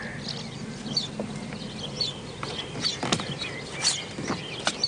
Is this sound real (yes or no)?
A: yes